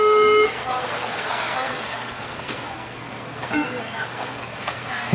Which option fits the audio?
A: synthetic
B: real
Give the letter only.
A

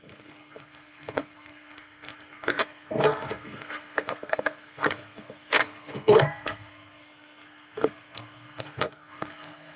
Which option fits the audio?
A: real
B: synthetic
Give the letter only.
B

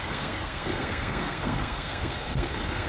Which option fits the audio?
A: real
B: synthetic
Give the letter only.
B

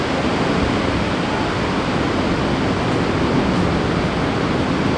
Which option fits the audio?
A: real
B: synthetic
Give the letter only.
A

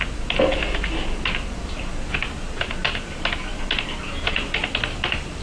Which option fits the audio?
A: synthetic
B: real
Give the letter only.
B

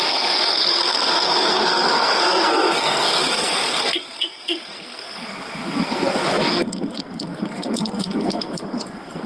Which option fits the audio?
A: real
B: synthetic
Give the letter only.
B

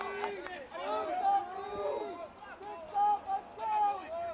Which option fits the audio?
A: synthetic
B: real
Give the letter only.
B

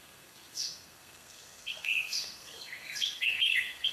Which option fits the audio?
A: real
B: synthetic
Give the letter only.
B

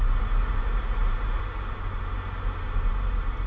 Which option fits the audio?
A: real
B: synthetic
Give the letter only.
A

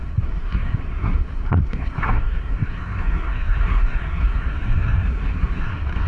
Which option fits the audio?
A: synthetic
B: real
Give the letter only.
A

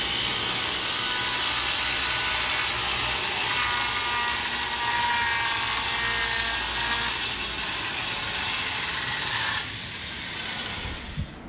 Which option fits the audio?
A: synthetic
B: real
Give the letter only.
B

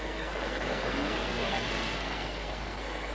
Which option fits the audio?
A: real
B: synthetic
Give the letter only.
B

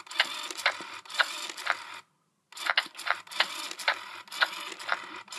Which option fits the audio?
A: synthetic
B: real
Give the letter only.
B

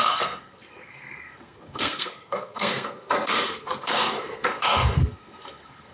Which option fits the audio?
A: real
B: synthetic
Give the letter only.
B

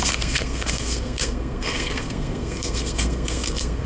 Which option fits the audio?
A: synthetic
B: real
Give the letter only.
A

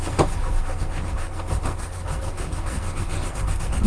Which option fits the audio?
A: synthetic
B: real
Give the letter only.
A